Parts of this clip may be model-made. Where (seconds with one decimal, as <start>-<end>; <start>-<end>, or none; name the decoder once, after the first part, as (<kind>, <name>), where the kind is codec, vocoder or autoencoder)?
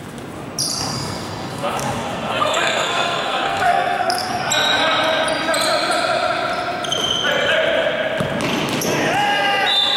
0.7-4.4 (codec, SNAC)